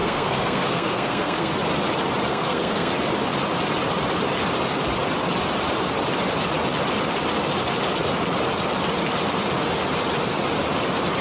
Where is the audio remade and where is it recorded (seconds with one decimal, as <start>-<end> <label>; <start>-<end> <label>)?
0.0-1.5 remade; 1.5-2.3 recorded; 2.3-2.9 remade; 2.9-11.2 recorded

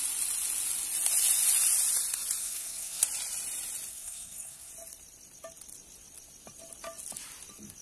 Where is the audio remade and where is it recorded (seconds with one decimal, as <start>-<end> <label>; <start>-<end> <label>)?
0.0-2.4 recorded; 2.4-3.0 remade; 3.0-3.9 recorded; 3.9-4.7 remade; 4.7-7.8 recorded

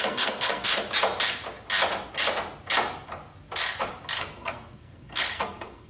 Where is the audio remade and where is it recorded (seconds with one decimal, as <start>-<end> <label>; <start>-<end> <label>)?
0.0-0.7 remade; 0.7-4.2 recorded; 4.2-5.9 remade

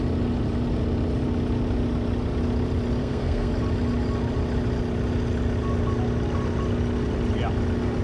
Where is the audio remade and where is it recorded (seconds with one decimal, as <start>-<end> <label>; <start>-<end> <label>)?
0.0-3.0 recorded; 3.0-3.5 remade; 3.5-8.0 recorded

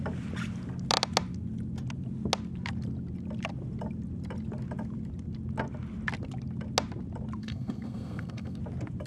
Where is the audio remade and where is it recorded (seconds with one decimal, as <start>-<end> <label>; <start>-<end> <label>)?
0.0-7.4 recorded; 7.4-8.6 remade; 8.6-9.1 recorded

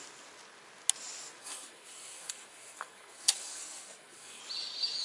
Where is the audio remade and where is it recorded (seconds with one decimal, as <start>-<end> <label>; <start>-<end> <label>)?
0.0-1.4 recorded; 1.4-4.4 remade; 4.4-5.0 recorded

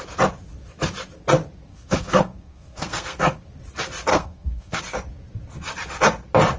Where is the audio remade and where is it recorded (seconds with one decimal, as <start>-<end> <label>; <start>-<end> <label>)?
0.0-1.7 recorded; 1.7-3.4 remade; 3.4-4.1 recorded; 4.1-4.8 remade; 4.8-6.6 recorded